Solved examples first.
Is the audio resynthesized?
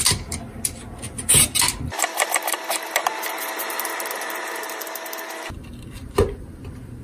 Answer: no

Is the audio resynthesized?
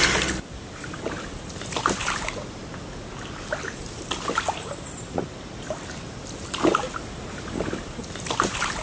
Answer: no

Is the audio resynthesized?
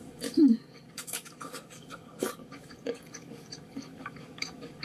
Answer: yes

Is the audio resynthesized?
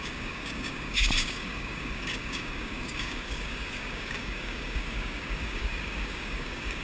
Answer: yes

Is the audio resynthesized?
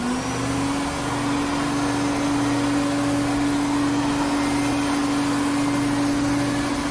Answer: no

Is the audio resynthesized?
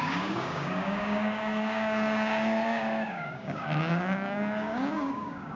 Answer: yes